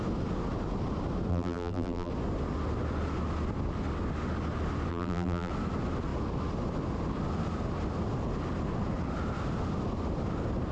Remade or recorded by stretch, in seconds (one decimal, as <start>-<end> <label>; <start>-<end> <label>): 0.0-1.3 recorded; 1.3-2.1 remade; 2.1-4.9 recorded; 4.9-5.5 remade; 5.5-10.7 recorded